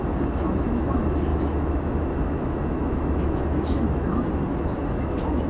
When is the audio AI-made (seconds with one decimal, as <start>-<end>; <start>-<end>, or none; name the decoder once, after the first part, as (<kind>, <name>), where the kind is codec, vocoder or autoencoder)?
0.0-5.5 (autoencoder, DAC-VAE)